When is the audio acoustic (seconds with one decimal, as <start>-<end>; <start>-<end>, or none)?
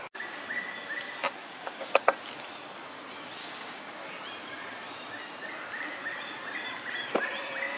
0.0-1.4; 2.0-3.4; 4.0-7.8